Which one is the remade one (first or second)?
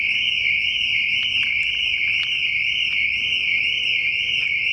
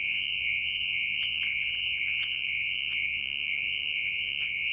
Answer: second